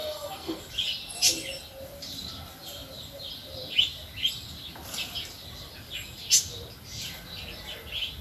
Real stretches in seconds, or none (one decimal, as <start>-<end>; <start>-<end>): 0.6-8.2